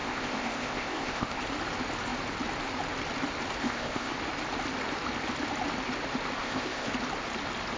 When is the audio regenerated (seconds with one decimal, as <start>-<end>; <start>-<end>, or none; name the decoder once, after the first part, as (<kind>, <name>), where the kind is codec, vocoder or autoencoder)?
0.0-1.4 (codec, ZipCodec); 3.6-4.1; 6.4-6.9